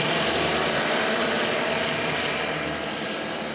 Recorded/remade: remade